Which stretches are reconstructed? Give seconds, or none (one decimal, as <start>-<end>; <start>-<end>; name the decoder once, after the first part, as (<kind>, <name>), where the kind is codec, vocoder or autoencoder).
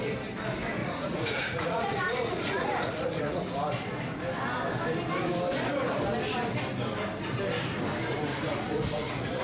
0.8-3.4 (vocoder, Vocos); 8.3-9.4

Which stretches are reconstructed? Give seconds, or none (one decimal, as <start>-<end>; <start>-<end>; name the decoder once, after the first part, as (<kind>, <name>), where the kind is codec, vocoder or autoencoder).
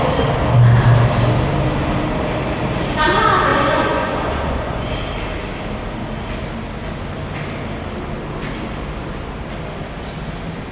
3.5-4.9 (vocoder, Vocos)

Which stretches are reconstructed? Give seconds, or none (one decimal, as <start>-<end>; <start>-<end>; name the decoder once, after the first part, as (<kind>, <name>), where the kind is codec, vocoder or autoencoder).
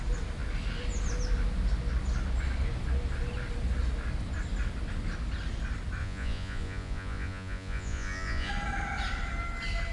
6.0-8.5 (vocoder, Vocos)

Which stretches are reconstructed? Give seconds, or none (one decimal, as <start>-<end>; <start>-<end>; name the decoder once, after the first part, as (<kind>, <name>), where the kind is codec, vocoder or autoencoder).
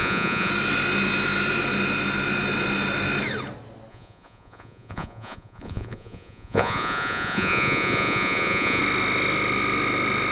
0.0-0.5 (vocoder, Vocos); 3.9-8.8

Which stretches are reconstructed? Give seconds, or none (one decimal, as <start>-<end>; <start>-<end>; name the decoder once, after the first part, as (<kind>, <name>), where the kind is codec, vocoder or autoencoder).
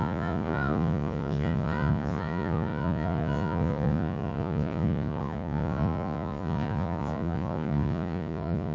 0.0-8.7 (vocoder, Vocos)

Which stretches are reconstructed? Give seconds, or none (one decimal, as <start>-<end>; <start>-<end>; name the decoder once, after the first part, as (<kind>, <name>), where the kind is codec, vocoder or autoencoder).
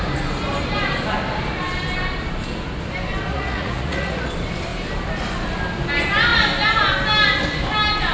3.3-4.3 (vocoder, Vocos)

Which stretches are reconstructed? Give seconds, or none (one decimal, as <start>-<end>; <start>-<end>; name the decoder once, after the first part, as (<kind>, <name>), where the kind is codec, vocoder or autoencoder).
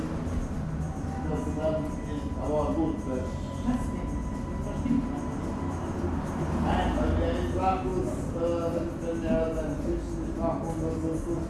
none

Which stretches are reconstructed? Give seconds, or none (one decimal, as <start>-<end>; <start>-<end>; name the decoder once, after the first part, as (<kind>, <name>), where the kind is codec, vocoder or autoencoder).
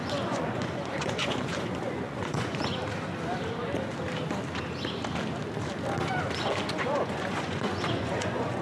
0.0-2.8 (vocoder, Vocos); 6.7-8.6